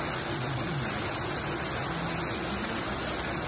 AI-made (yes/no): no